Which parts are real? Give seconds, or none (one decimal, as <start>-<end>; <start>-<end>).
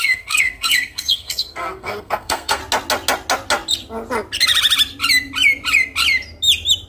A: 2.6-6.9